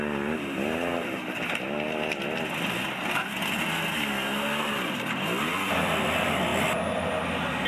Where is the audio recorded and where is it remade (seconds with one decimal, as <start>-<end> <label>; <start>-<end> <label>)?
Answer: 0.0-7.7 recorded